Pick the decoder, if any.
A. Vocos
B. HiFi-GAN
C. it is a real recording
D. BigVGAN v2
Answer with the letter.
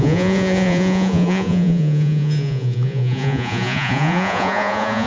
A